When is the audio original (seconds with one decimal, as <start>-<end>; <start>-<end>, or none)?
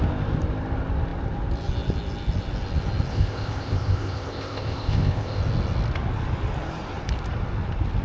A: 0.0-3.1; 5.4-8.0